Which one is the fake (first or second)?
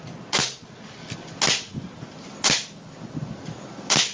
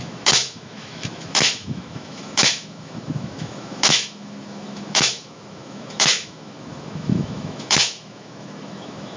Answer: second